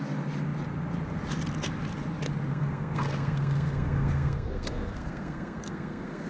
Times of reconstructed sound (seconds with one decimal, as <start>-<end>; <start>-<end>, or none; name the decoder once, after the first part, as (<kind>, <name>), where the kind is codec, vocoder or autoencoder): 2.5-6.3 (codec, SNAC)